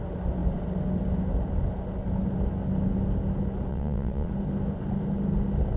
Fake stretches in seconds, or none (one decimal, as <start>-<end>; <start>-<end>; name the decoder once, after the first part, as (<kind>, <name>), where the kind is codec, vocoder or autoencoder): 3.7-4.3 (vocoder, WaveNeXt)